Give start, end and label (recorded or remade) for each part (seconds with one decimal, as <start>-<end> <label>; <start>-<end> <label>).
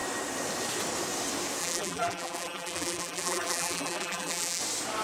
0.0-1.6 recorded; 1.6-4.6 remade; 4.6-5.0 recorded